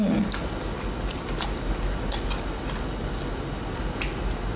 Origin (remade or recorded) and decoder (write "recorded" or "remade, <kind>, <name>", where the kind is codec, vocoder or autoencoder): recorded